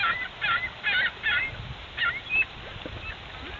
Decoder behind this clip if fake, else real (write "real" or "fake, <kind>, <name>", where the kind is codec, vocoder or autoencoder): real